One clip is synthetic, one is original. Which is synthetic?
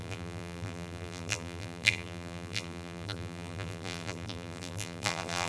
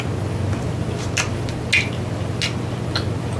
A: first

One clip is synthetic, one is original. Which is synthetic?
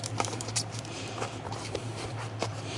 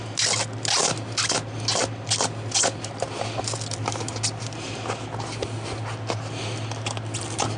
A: first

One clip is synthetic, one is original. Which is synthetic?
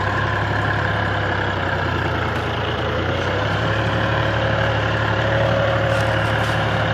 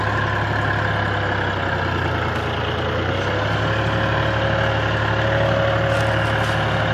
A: first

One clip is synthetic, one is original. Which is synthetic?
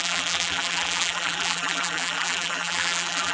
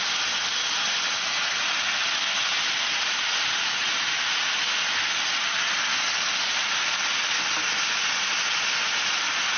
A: first